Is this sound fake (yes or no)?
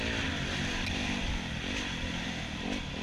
no